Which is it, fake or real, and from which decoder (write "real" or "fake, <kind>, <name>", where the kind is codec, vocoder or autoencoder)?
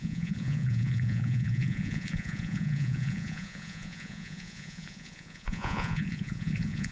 fake, vocoder, Vocos